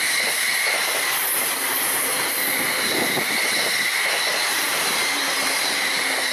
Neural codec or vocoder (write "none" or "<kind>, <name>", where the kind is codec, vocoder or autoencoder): vocoder, BigVGAN v2